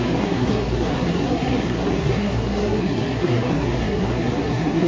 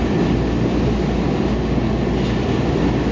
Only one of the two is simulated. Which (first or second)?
first